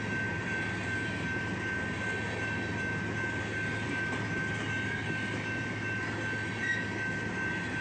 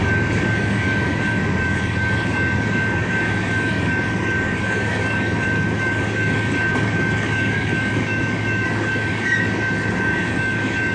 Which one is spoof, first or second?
second